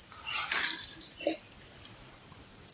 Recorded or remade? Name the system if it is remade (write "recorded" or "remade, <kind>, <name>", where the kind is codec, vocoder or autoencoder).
recorded